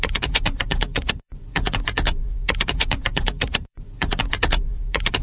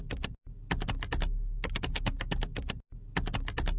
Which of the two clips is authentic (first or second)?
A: second